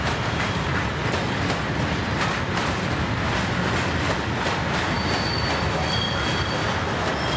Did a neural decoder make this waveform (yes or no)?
no